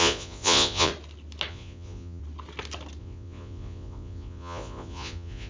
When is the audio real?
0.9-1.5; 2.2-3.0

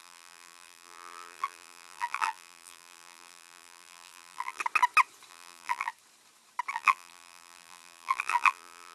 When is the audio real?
4.6-5.3; 5.9-6.7